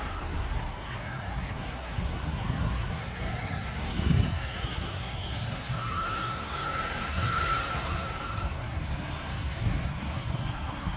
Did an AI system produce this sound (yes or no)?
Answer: yes